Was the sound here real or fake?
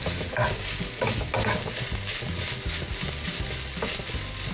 real